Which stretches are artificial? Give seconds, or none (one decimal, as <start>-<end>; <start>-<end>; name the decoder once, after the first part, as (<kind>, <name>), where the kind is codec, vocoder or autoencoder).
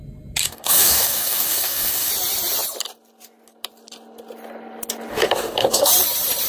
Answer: 0.4-2.1 (codec, DAC); 5.1-5.9